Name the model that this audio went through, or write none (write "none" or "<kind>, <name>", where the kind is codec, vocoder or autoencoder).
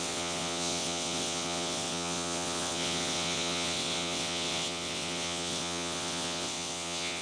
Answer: vocoder, WaveNeXt